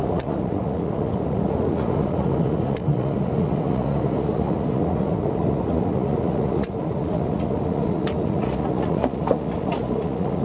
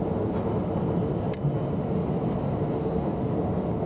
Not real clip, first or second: first